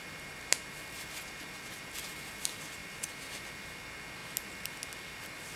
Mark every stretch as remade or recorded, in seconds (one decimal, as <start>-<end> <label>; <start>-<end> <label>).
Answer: 0.0-5.6 recorded